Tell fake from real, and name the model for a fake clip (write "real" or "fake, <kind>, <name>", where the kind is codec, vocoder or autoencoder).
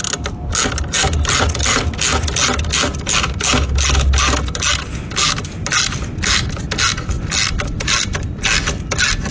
real